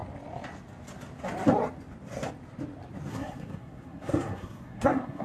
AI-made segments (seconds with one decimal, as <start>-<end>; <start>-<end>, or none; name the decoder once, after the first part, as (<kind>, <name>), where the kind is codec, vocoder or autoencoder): 3.1-5.2 (codec, SNAC)